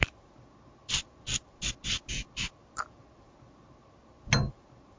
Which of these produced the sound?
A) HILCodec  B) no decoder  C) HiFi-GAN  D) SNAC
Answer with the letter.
B